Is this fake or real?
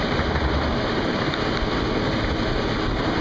real